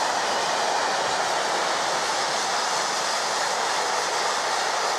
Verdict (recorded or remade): recorded